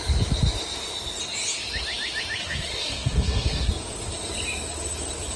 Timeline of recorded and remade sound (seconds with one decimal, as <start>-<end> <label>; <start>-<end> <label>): 0.0-2.4 recorded; 2.4-3.7 remade; 3.7-5.4 recorded